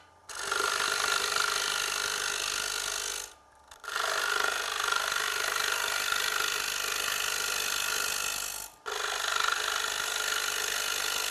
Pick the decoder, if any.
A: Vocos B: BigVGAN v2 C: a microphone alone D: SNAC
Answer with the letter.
C